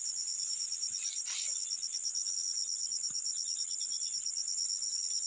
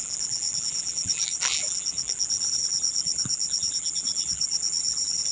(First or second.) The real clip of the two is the first